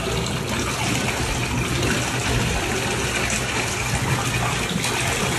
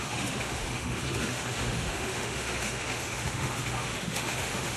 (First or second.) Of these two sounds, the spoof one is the second